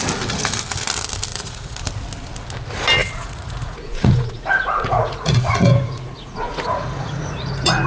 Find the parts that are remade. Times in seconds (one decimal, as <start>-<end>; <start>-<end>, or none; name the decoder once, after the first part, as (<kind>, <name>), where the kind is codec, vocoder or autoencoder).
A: 1.3-1.8 (vocoder, Vocos); 3.0-7.9